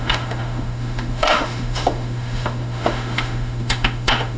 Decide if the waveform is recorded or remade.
remade